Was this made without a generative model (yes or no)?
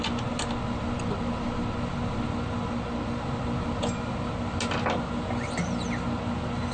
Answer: yes